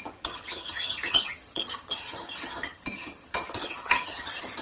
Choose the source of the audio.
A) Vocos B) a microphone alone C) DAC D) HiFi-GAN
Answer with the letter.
D